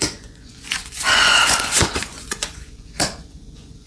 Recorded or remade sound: remade